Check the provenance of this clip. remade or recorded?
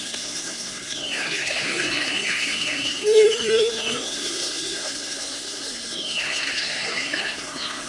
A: remade